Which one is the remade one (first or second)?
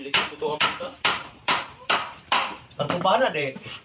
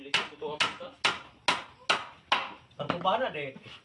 first